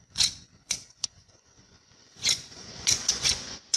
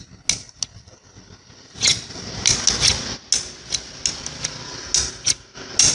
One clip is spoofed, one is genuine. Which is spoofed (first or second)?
first